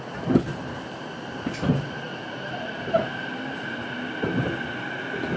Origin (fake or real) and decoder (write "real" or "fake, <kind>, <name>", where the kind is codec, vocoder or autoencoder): real